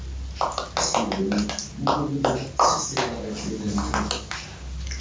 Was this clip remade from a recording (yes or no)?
no